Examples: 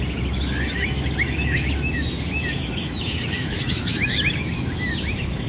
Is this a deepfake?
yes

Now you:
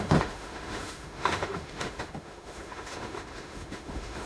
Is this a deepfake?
yes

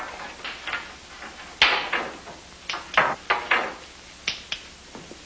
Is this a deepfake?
no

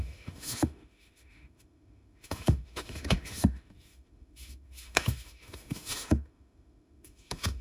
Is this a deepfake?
yes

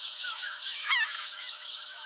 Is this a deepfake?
yes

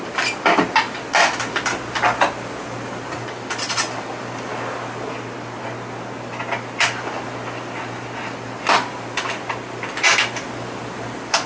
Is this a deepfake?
no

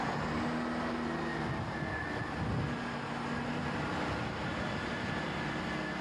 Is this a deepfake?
no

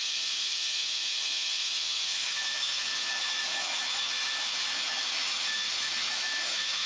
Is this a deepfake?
yes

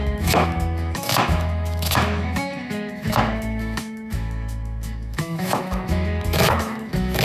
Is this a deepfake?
yes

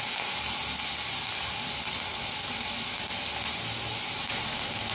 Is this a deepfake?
no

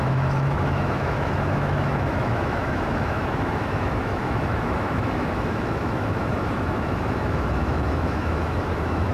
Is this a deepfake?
yes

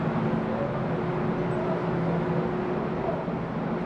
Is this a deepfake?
no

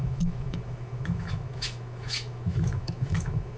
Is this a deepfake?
yes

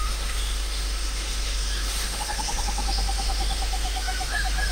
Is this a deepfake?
yes